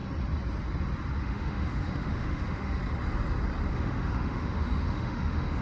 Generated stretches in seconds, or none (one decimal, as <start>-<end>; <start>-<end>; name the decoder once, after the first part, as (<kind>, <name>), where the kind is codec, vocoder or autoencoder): 1.2-2.8 (autoencoder, DAC-VAE); 3.7-5.6